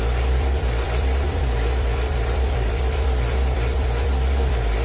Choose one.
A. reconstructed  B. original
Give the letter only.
A